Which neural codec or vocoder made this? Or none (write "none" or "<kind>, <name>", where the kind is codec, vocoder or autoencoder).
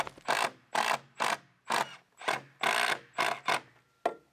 none